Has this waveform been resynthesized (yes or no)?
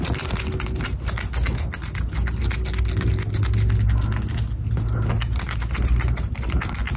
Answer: no